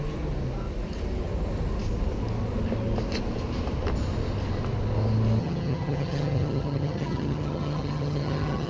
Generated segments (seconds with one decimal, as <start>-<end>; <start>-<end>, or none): 5.4-8.7